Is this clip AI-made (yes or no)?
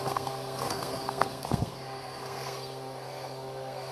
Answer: yes